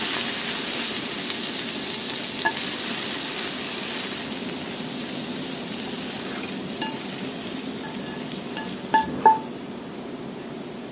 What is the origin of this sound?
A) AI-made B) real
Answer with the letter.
B